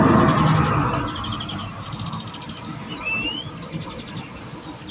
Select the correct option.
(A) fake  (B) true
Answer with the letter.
B